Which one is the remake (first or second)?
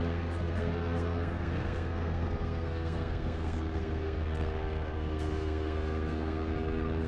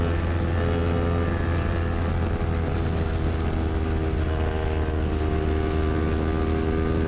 first